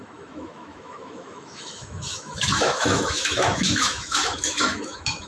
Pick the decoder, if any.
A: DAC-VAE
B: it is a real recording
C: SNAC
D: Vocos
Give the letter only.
A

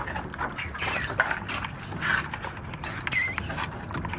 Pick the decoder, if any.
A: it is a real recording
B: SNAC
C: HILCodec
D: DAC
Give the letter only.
A